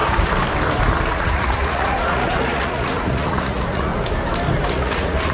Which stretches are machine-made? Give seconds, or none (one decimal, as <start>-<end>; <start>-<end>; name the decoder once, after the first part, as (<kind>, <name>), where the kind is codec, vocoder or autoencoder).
1.1-3.9 (vocoder, Vocos); 4.7-5.3

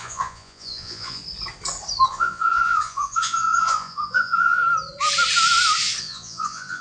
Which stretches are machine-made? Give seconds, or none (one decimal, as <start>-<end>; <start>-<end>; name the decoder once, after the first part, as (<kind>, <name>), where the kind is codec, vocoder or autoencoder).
0.0-1.2 (vocoder, Vocos); 2.1-4.6; 6.0-6.8

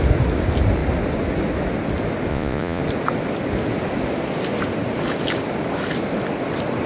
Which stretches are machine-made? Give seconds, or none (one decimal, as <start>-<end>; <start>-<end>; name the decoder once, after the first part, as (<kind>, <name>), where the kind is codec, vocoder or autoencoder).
2.3-2.8 (vocoder, Vocos)

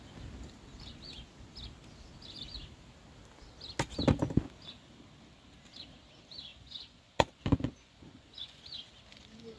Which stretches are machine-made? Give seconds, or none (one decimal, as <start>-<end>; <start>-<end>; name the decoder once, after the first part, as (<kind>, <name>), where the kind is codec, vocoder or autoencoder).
6.5-8.6 (vocoder, Vocos)

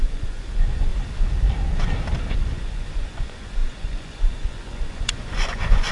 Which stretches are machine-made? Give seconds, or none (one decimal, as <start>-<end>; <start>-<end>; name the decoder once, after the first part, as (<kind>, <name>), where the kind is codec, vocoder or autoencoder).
0.0-0.9 (vocoder, Vocos); 2.3-5.9

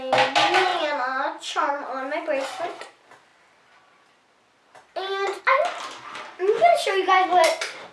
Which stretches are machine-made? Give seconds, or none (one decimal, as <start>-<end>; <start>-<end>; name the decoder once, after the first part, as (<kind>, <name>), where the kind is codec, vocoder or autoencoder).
none

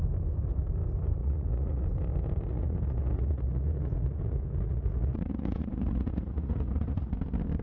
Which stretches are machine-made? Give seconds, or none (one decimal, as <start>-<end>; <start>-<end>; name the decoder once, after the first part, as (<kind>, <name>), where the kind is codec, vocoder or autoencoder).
1.2-1.8 (vocoder, Vocos); 2.5-7.1